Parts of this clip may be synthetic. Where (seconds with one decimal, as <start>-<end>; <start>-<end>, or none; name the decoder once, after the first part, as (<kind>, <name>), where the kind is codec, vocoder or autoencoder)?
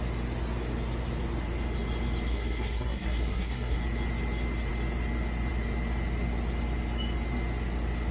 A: 2.3-3.8 (codec, SNAC)